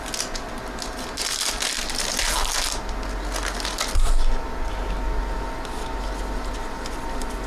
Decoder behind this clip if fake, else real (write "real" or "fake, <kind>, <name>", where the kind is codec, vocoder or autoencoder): real